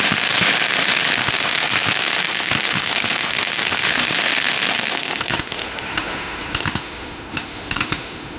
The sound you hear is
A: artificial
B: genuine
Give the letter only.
A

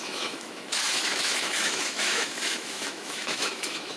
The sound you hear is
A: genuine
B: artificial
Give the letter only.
B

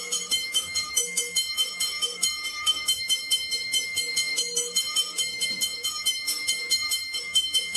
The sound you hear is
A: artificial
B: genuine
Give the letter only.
A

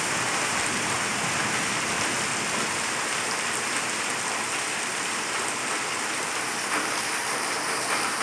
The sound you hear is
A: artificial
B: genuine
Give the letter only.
B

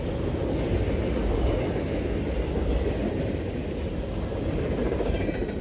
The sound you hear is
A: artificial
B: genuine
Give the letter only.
B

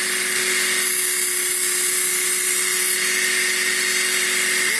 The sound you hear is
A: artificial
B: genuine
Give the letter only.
B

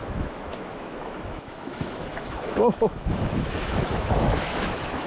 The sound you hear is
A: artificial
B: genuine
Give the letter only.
A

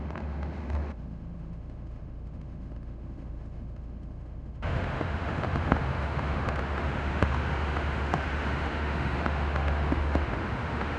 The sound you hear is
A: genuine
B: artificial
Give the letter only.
B